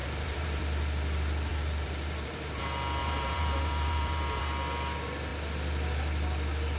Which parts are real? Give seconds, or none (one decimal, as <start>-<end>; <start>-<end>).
0.6-1.5; 2.6-3.0; 4.4-6.8